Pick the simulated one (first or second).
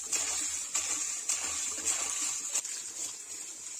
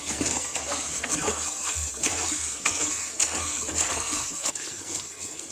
second